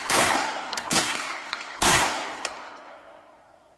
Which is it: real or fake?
fake